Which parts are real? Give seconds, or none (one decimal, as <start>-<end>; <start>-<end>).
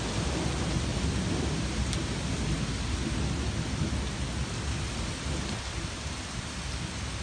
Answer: 0.0-7.2